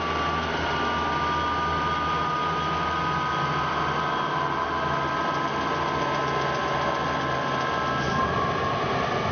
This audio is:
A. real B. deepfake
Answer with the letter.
A